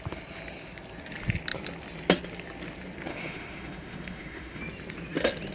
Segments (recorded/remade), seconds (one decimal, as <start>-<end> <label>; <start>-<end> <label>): 0.0-3.1 recorded; 3.1-4.6 remade; 4.6-5.5 recorded